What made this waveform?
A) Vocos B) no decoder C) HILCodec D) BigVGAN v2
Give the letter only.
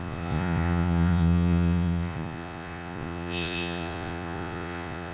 A